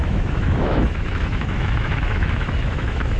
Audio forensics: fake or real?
fake